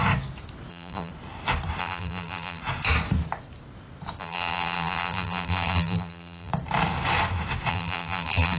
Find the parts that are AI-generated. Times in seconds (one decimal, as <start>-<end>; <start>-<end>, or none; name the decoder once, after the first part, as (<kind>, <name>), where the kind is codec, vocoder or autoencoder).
0.7-1.1 (vocoder, BigVGAN v2); 1.8-2.6; 4.2-6.5; 7.7-8.6